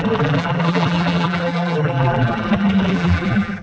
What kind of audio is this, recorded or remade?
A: remade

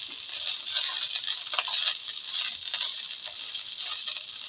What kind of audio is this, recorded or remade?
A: recorded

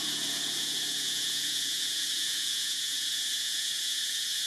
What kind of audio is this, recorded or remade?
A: remade